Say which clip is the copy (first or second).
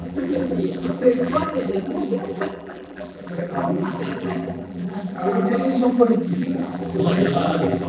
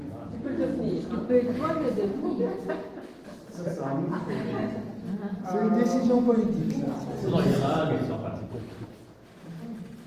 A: first